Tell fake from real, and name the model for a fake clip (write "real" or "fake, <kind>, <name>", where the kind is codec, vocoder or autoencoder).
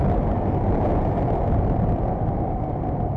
real